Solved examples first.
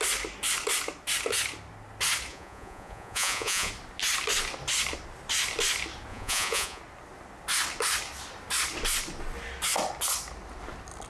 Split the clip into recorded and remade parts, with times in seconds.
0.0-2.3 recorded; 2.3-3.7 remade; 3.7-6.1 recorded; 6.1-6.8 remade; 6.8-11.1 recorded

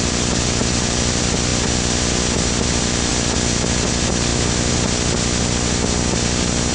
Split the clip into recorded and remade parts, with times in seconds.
0.0-6.7 recorded

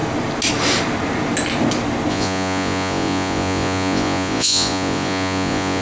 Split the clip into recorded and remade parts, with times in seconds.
0.0-2.1 recorded; 2.1-5.8 remade